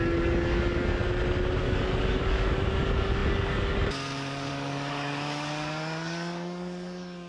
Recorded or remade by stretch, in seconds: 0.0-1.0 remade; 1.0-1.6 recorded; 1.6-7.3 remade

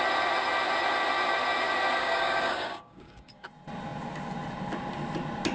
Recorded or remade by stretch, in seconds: 0.0-2.0 recorded; 2.0-3.5 remade; 3.5-5.5 recorded

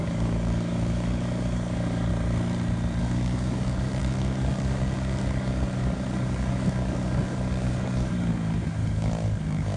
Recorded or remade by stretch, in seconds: 0.0-2.1 remade; 2.1-3.0 recorded; 3.0-9.8 remade

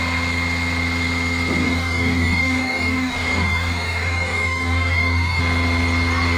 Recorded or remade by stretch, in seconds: 0.0-1.6 recorded; 1.6-5.4 remade; 5.4-6.4 recorded

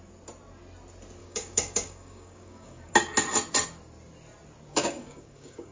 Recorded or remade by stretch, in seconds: 0.0-1.2 recorded; 1.2-2.9 remade; 2.9-4.7 recorded; 4.7-5.7 remade